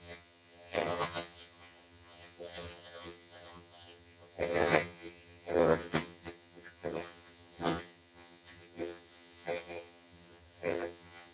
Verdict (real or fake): fake